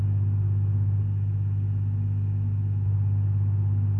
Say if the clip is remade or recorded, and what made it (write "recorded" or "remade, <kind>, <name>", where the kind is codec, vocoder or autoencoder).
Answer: recorded